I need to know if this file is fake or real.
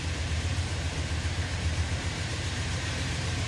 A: fake